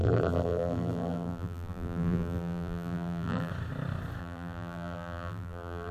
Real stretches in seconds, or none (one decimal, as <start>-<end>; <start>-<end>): 3.5-4.2